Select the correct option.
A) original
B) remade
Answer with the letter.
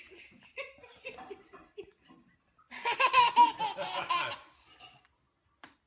A